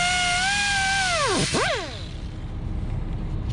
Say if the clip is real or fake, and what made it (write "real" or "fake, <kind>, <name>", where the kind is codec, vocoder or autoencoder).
real